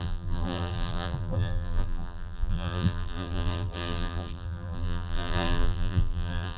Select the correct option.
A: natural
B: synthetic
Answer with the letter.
B